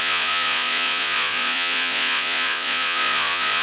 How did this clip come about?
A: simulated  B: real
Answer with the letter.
A